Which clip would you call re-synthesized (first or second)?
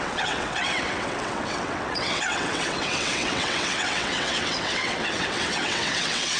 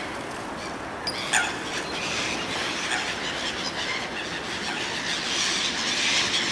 first